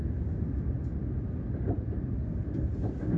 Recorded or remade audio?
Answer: recorded